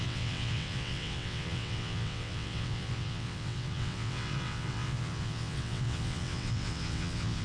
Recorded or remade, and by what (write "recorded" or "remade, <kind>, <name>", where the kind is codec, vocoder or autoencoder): remade, vocoder, WaveNeXt